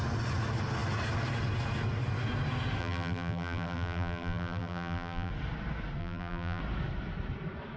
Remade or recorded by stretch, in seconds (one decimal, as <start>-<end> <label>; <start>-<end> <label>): 0.0-2.8 recorded; 2.8-5.3 remade; 5.3-6.0 recorded; 6.0-6.6 remade; 6.6-7.8 recorded